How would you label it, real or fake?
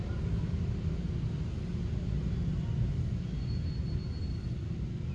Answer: real